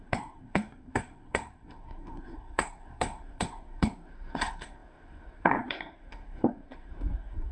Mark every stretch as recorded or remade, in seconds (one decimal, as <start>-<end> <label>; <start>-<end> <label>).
0.0-7.5 remade